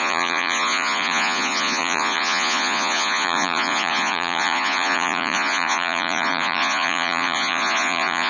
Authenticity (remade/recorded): remade